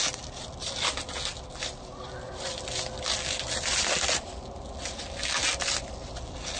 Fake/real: real